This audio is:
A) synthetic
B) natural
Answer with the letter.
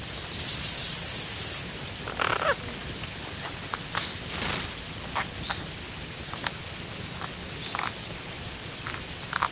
B